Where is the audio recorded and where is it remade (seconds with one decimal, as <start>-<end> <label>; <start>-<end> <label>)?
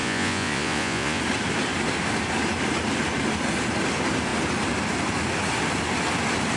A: 0.0-1.2 remade; 1.2-6.6 recorded